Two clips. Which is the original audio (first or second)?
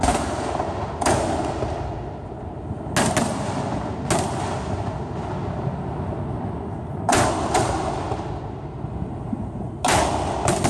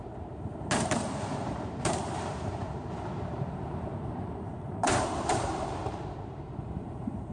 first